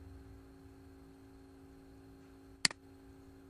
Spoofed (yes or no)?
no